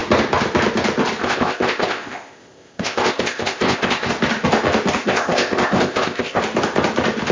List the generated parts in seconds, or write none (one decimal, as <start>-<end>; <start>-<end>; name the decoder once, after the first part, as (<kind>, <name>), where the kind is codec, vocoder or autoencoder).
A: 1.2-4.1 (codec, ZipCodec); 5.0-6.4